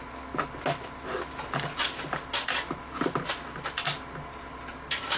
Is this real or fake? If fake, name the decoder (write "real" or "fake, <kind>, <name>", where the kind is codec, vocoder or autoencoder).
real